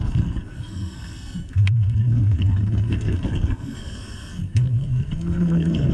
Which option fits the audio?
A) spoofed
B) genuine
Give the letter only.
A